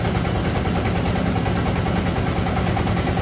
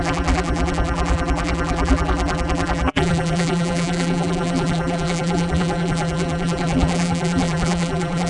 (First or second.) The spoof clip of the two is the second